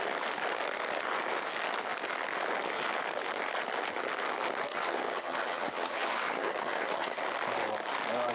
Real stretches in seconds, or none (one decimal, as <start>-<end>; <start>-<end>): 0.0-4.7; 7.2-8.3